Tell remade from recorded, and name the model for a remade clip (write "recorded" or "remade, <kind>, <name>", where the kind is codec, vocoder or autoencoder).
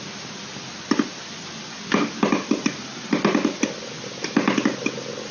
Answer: recorded